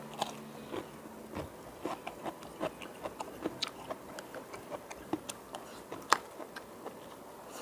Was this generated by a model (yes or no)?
no